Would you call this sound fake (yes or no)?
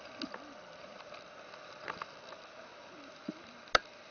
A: no